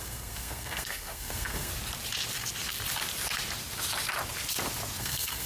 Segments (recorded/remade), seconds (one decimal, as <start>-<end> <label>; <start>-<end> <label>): 0.0-1.7 remade; 1.7-5.0 recorded; 5.0-5.5 remade